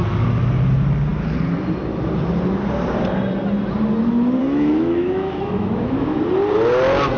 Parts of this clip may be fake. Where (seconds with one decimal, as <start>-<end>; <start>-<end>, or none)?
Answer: 4.4-6.2